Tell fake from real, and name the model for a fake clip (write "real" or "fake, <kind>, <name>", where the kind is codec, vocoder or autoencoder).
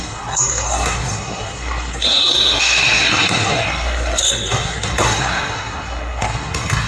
fake, codec, SNAC